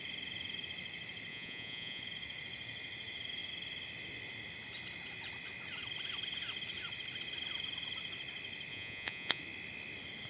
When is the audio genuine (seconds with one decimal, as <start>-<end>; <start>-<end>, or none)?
0.0-1.3; 2.0-8.7; 9.4-10.3